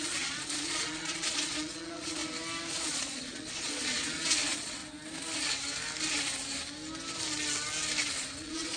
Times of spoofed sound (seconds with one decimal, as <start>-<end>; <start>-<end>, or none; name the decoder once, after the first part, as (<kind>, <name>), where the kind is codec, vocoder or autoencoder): 0.0-2.2 (vocoder, Vocos); 2.7-4.8; 8.3-8.8

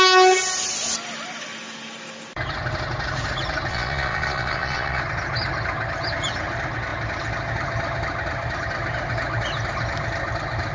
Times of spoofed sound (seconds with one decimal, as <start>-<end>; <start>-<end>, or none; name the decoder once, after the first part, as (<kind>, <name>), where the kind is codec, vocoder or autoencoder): 3.7-5.0 (vocoder, Vocos)

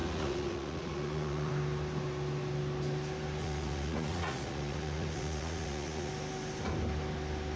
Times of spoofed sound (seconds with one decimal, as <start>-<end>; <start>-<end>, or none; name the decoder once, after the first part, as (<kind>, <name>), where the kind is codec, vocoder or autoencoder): 0.0-1.5 (vocoder, Vocos); 3.4-6.1

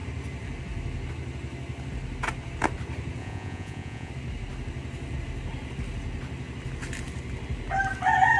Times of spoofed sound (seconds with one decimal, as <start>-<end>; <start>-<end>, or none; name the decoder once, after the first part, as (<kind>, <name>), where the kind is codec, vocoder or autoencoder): 3.2-4.1 (vocoder, Vocos)